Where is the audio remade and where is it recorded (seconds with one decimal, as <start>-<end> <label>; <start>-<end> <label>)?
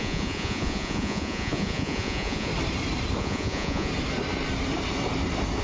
0.0-2.5 remade; 2.5-3.2 recorded; 3.2-3.9 remade; 3.9-5.6 recorded